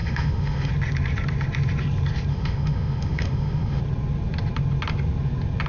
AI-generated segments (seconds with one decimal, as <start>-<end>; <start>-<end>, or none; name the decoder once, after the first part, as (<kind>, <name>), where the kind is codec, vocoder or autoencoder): 0.0-0.7 (autoencoder, DAC-VAE); 2.3-3.8